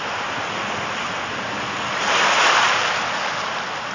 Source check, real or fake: real